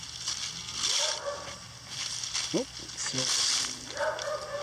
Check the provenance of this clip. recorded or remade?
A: recorded